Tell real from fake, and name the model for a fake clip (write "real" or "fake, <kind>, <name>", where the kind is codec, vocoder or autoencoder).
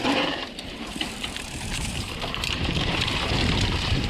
fake, vocoder, BigVGAN v2